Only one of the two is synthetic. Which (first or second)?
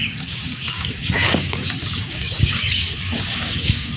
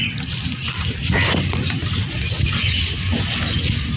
first